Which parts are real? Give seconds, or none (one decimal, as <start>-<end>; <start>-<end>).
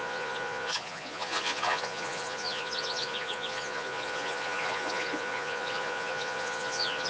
none